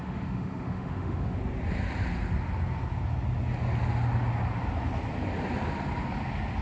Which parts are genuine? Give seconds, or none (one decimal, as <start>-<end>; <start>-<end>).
1.4-6.6